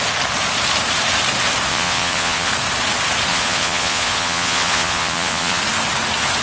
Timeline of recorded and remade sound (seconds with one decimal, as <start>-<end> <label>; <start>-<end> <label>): 0.0-1.7 recorded; 1.7-2.5 remade; 2.5-3.3 recorded; 3.3-5.6 remade; 5.6-6.4 recorded

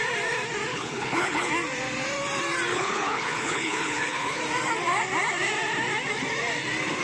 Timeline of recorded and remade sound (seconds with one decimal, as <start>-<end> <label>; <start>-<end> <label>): 0.0-0.7 recorded; 0.7-1.5 remade; 1.5-2.7 recorded; 2.7-4.4 remade; 4.4-7.0 recorded

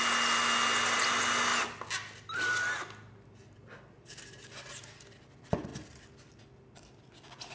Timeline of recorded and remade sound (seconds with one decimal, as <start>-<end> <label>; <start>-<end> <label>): 0.0-7.5 recorded